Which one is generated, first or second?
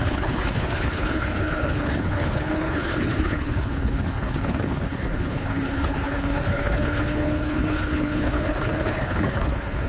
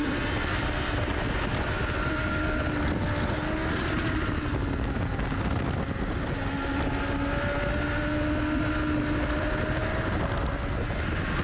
first